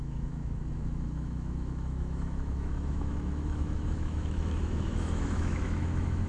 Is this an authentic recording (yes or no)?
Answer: no